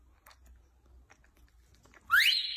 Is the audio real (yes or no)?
yes